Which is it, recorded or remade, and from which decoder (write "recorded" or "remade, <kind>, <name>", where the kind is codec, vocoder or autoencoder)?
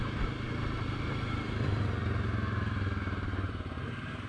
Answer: remade, vocoder, BigVGAN v2